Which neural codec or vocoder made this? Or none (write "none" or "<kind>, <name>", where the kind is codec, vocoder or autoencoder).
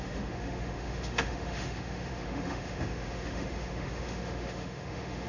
autoencoder, DAC-VAE